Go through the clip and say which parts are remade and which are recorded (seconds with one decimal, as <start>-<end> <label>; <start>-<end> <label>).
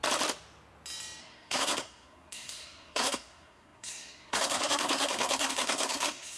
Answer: 0.0-1.2 recorded; 1.2-6.4 remade